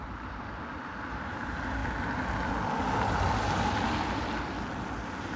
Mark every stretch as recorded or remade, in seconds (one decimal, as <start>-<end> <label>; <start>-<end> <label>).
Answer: 0.0-5.4 recorded